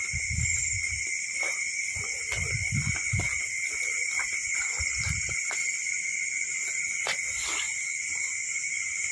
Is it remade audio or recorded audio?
recorded